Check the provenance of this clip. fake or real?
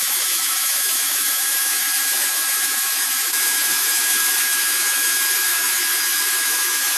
fake